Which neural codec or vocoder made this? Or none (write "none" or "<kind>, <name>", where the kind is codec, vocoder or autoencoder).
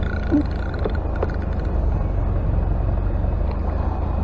none